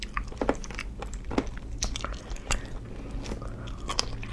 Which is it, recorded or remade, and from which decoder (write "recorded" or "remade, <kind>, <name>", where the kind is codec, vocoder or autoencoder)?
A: recorded